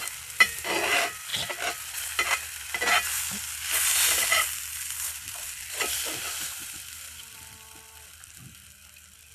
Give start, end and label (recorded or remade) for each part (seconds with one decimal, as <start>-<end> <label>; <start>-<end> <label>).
0.0-9.3 remade